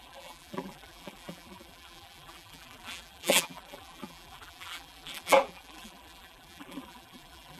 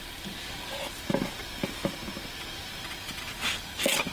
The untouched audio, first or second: second